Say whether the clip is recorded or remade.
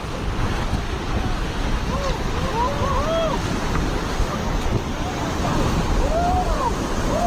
recorded